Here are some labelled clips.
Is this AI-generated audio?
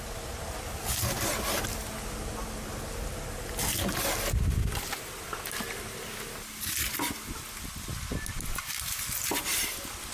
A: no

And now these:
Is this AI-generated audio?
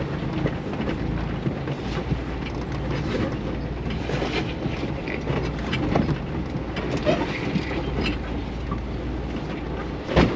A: no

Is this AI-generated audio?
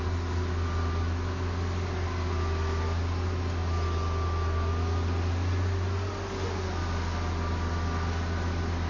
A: no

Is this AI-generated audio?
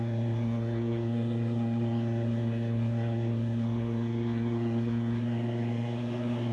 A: yes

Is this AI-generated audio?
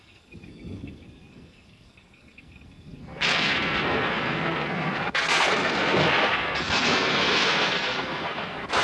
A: yes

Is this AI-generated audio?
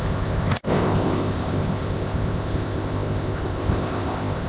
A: yes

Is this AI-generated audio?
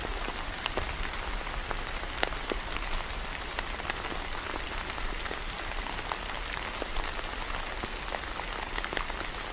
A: no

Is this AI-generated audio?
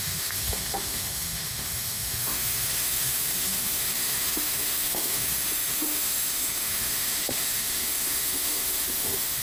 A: yes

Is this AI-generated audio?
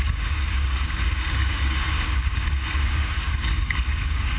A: yes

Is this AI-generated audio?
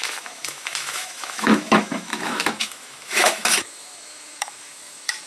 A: yes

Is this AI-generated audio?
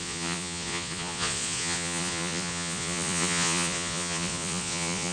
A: yes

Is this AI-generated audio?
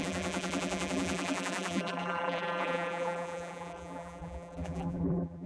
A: yes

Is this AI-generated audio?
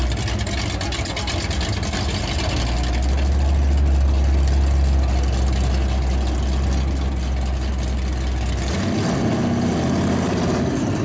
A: no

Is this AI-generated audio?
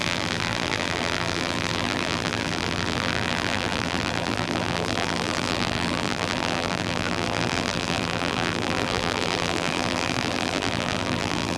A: yes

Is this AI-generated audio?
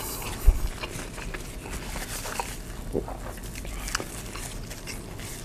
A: no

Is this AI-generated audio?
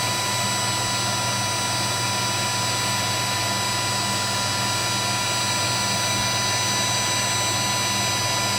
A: no